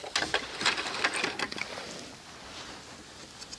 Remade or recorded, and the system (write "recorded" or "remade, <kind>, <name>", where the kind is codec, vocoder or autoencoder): recorded